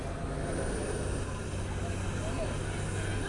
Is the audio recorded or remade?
recorded